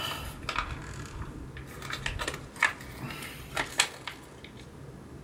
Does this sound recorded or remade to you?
recorded